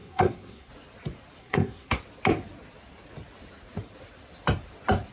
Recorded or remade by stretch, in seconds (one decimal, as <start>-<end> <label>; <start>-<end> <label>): 0.0-0.7 remade; 0.7-1.4 recorded; 1.4-2.0 remade; 2.0-5.1 recorded